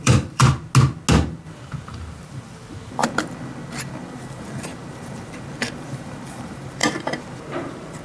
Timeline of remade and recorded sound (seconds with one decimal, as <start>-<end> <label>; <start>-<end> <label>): 0.0-0.4 remade; 0.4-1.9 recorded; 1.9-3.0 remade; 3.0-4.1 recorded; 4.1-8.0 remade